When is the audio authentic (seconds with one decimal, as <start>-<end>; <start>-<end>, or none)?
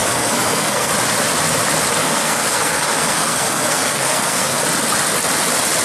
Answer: 0.9-2.0; 4.6-5.8